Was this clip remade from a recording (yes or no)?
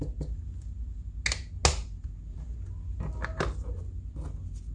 no